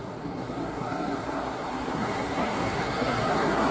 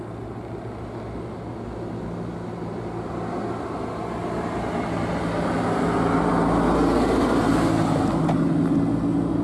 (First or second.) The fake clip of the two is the first